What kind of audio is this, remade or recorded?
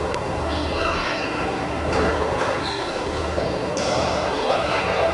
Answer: remade